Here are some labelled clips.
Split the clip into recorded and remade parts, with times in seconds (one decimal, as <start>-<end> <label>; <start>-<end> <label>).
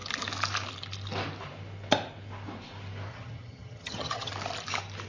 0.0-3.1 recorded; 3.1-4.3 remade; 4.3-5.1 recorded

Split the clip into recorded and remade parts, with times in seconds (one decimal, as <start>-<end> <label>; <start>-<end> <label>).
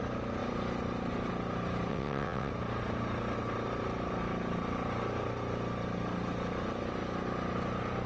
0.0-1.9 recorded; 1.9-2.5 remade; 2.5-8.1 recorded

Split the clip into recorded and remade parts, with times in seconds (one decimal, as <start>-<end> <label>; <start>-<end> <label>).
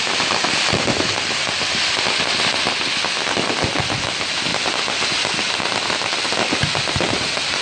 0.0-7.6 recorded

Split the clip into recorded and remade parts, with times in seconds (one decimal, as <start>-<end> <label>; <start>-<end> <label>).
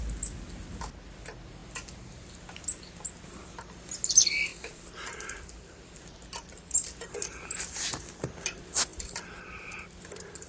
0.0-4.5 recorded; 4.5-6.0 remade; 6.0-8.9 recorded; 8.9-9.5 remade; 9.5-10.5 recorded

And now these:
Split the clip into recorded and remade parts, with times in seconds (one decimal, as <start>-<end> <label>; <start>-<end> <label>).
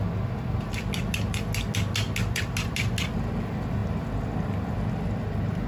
0.0-5.7 recorded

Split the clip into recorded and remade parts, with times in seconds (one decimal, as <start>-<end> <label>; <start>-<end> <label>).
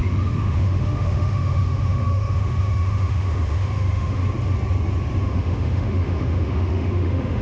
0.0-4.2 remade; 4.2-5.2 recorded; 5.2-7.4 remade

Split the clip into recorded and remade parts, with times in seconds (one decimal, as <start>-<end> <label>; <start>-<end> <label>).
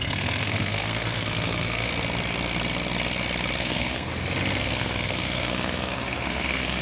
0.0-1.9 remade; 1.9-3.6 recorded; 3.6-4.1 remade; 4.1-4.6 recorded; 4.6-6.8 remade